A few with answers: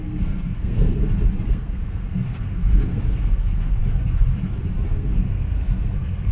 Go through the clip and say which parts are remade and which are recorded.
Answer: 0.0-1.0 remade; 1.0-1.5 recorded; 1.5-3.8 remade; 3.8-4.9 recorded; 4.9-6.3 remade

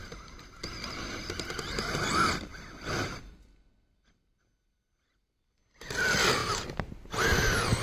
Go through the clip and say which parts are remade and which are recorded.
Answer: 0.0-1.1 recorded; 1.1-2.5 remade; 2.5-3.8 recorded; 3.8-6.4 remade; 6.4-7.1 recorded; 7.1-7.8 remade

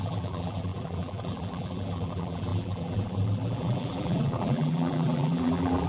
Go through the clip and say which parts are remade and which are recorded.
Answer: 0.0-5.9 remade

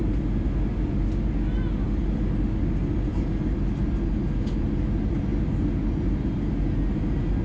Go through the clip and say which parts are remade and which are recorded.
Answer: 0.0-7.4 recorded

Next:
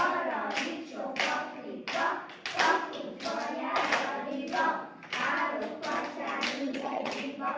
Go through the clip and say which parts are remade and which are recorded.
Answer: 0.0-6.6 recorded; 6.6-7.1 remade; 7.1-7.6 recorded